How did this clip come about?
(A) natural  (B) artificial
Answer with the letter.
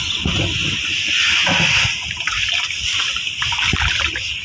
A